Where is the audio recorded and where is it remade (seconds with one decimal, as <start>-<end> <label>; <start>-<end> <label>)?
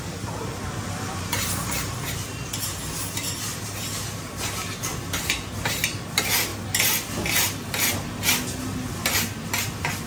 0.0-6.5 remade; 6.5-10.1 recorded